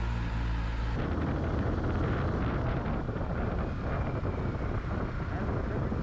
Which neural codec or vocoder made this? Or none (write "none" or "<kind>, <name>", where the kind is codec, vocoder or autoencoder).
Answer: none